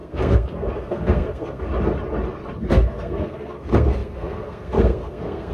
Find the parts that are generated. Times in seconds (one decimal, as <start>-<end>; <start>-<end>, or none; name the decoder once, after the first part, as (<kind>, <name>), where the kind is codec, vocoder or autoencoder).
0.0-1.7 (codec, SNAC); 2.7-5.5